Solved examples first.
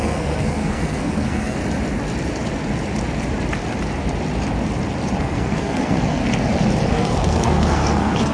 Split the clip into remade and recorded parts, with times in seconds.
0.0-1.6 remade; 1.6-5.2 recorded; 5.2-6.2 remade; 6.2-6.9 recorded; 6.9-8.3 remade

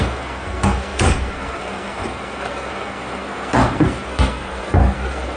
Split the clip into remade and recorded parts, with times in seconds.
0.0-5.4 remade

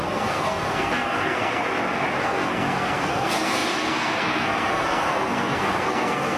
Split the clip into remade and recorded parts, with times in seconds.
0.0-1.6 remade; 1.6-2.2 recorded; 2.2-6.4 remade

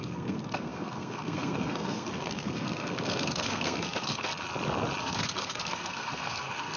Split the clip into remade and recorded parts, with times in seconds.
0.0-4.3 remade; 4.3-5.0 recorded; 5.0-6.8 remade

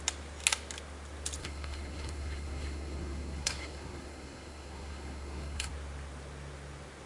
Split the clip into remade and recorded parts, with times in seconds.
0.0-1.4 recorded; 1.4-5.7 remade; 5.7-7.1 recorded